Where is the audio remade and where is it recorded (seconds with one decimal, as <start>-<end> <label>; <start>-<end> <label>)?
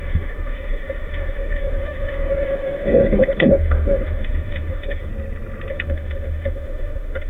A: 0.0-5.1 remade; 5.1-5.7 recorded; 5.7-7.3 remade